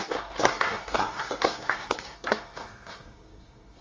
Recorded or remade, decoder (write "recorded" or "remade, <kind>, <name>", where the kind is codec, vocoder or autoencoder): remade, codec, SNAC